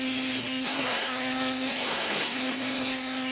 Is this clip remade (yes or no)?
yes